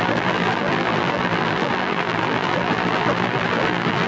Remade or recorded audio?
remade